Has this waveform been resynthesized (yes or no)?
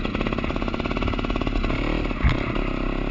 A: no